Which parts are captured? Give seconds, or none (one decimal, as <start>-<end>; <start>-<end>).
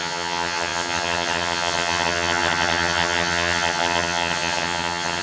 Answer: none